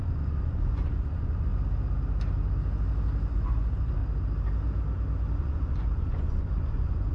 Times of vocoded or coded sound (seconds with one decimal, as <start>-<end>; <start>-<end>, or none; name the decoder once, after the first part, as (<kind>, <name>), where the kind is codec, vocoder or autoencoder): 0.0-1.5 (vocoder, Vocos); 3.3-4.0; 5.4-7.1